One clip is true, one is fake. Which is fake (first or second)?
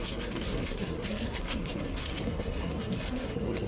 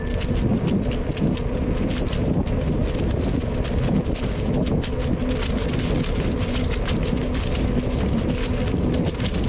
first